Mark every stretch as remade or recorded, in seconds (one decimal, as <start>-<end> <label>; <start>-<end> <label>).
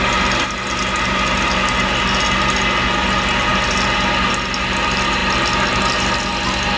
0.0-6.8 recorded